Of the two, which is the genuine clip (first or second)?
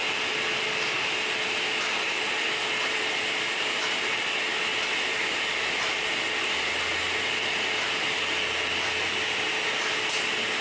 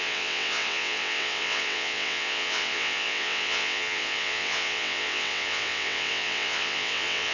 first